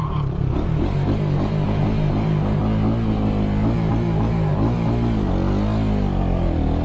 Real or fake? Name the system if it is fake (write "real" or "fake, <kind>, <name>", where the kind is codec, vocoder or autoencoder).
real